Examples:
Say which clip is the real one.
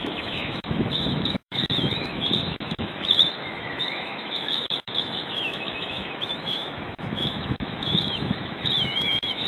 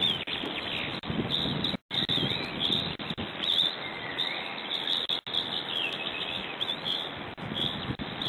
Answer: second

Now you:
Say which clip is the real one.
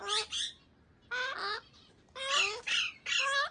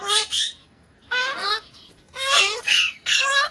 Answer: first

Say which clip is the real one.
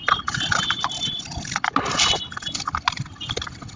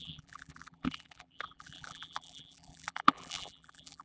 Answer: first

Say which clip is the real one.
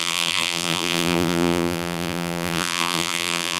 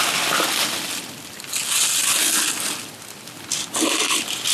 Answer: second